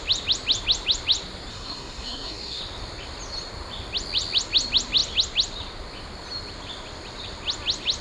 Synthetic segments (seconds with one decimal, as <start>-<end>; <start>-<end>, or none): 1.5-2.6